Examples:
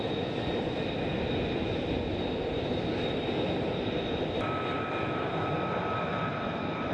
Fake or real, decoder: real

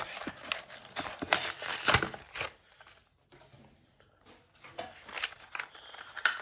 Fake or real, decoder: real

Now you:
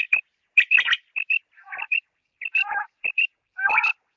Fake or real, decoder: real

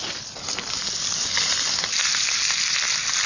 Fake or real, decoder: real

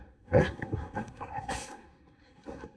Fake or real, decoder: fake, codec, SNAC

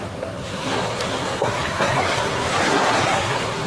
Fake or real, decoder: fake, codec, SNAC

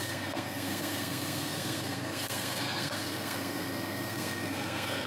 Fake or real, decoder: fake, codec, SNAC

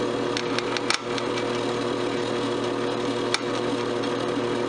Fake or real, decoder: real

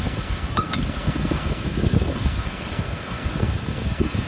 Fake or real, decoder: fake, codec, SNAC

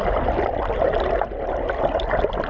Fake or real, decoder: real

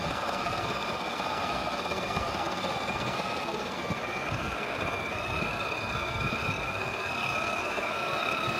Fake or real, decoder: fake, codec, SNAC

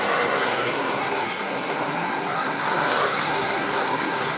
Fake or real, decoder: fake, codec, SNAC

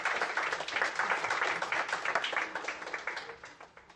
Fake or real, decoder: real